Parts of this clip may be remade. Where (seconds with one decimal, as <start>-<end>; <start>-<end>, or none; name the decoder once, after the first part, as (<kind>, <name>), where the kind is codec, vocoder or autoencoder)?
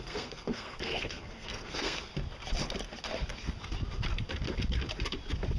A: 0.0-2.1 (codec, SNAC)